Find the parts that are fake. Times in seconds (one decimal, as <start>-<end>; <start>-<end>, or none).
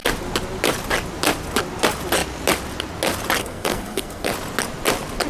3.4-4.3